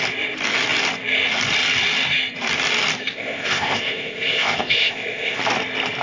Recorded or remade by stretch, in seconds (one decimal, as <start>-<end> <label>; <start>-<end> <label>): 0.0-3.1 recorded; 3.1-5.4 remade; 5.4-6.0 recorded